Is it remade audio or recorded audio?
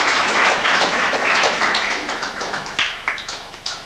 remade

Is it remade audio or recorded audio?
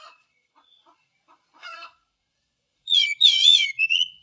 remade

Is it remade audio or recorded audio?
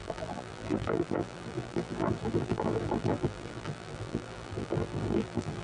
remade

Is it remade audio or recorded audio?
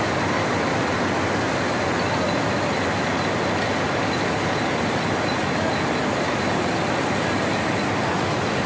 recorded